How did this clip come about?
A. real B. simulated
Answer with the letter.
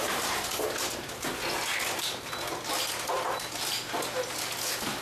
A